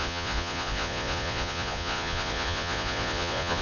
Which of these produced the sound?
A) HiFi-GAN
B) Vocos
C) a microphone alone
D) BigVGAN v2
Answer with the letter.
B